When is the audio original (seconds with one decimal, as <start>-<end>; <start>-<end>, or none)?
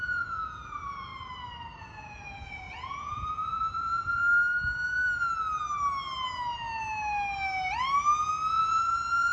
1.1-1.8; 4.2-8.5